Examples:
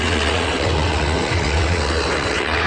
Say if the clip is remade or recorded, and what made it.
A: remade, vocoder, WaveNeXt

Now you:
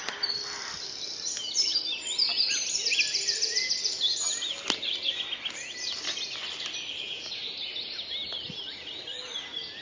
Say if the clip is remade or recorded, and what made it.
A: recorded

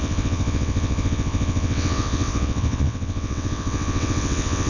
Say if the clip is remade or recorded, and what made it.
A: remade, vocoder, WaveNeXt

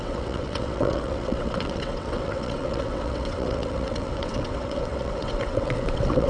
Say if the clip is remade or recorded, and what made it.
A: remade, vocoder, WaveNeXt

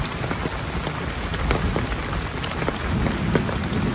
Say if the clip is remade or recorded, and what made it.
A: recorded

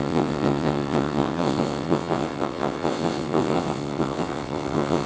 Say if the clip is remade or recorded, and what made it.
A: remade, vocoder, WaveNeXt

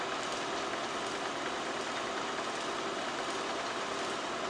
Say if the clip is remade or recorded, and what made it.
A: recorded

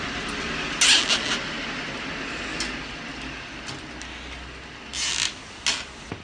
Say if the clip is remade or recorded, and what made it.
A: recorded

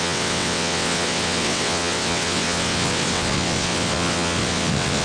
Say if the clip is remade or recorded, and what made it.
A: remade, vocoder, WaveNeXt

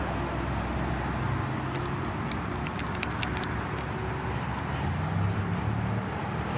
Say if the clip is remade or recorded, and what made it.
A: recorded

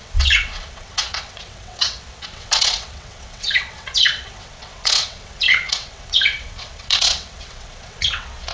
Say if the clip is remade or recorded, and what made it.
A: remade, vocoder, WaveNeXt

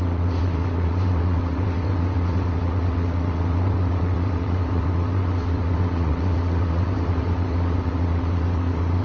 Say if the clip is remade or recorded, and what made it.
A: remade, vocoder, WaveNeXt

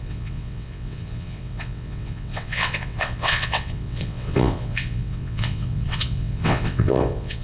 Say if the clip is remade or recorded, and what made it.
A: remade, vocoder, WaveNeXt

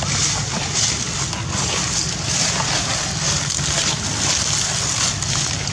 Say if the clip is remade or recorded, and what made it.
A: recorded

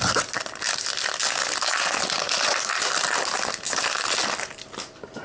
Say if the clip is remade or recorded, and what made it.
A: recorded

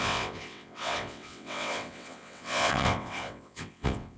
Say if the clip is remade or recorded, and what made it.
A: remade, vocoder, WaveNeXt